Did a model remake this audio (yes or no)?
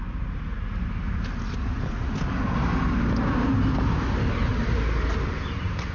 no